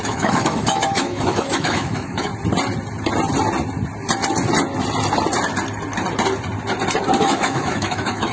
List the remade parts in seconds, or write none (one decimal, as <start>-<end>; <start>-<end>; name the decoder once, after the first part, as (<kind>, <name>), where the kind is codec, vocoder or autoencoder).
0.0-2.3 (autoencoder, DAC-VAE); 7.2-8.3